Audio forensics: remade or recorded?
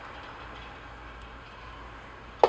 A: recorded